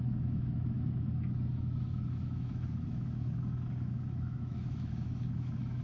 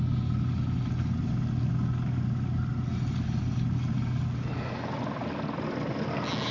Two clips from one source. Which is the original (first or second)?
second